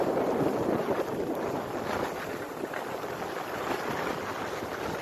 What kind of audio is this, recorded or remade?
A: recorded